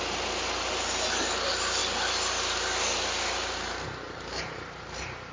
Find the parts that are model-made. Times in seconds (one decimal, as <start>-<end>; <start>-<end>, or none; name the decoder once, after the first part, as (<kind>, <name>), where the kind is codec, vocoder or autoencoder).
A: none